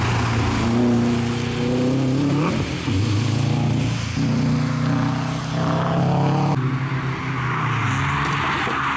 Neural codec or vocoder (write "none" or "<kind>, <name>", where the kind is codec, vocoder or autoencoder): none